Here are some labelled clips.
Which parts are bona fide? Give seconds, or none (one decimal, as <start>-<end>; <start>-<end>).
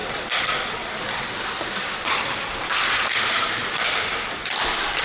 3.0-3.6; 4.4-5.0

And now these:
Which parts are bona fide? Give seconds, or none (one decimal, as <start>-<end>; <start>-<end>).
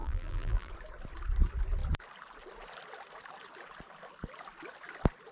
0.7-5.3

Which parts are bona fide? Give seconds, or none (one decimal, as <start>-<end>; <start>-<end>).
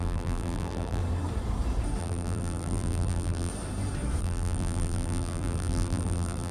1.0-2.0; 3.5-4.2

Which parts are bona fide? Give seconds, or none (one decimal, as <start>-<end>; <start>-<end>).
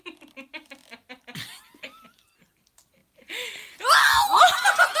0.0-0.8; 1.6-4.1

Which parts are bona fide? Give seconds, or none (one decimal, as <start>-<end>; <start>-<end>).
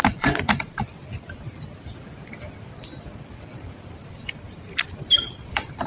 0.8-4.0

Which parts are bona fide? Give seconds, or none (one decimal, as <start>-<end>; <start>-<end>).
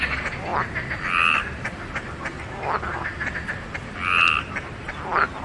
0.5-3.0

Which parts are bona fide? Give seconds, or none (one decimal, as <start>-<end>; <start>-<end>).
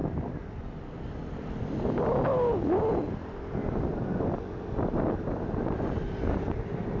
0.0-4.2